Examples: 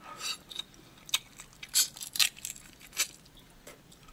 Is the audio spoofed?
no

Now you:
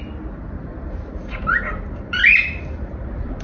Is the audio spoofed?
yes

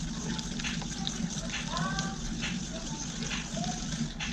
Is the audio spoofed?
no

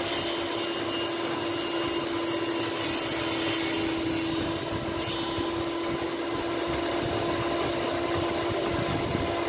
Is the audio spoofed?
no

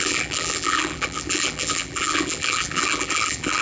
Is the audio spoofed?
yes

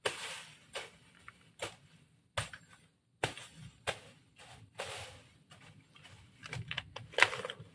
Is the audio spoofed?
no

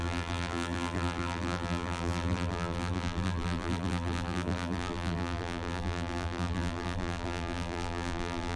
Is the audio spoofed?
yes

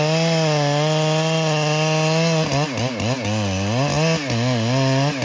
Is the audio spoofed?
no